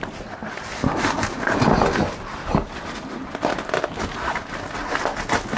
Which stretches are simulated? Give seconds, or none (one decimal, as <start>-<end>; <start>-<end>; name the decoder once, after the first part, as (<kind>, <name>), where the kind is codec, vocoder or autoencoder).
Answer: none